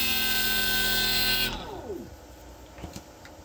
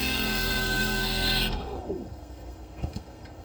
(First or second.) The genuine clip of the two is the first